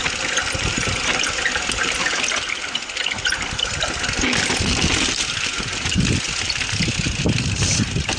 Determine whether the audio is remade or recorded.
recorded